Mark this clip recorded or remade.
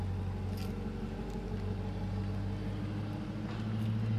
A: recorded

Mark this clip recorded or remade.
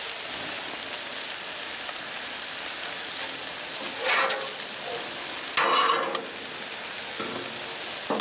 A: recorded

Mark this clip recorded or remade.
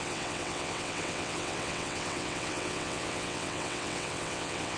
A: remade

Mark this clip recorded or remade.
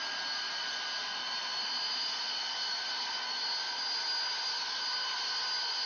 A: recorded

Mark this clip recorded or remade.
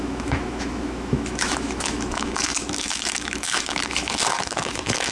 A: remade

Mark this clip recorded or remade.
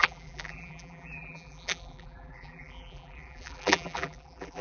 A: remade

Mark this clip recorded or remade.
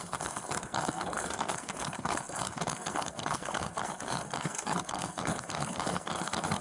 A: remade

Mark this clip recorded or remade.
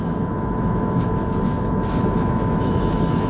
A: remade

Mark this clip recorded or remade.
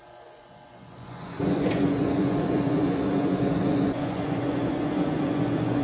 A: remade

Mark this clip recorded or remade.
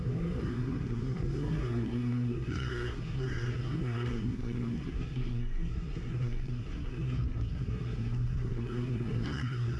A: remade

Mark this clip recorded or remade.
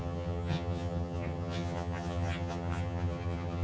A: remade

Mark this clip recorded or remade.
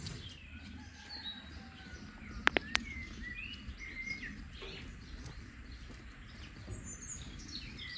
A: recorded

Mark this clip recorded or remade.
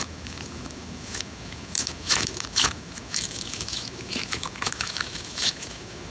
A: remade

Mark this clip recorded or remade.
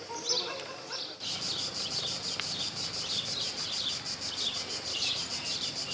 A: recorded